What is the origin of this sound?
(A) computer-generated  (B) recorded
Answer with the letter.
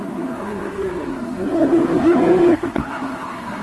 A